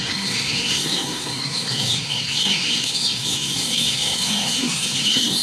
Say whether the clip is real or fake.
fake